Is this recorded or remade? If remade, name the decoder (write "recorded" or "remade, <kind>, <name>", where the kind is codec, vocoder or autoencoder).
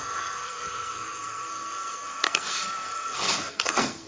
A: remade, codec, SNAC